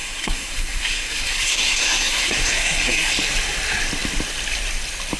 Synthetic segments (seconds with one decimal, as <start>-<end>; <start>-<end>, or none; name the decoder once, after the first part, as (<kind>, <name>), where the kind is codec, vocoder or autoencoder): 0.0-3.1 (codec, SNAC)